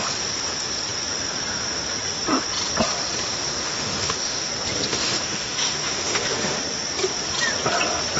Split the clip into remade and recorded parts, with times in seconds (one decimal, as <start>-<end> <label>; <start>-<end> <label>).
0.0-3.6 recorded; 3.6-4.5 remade; 4.5-4.9 recorded; 4.9-6.6 remade; 6.6-8.2 recorded